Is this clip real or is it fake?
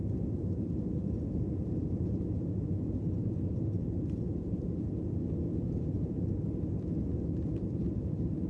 real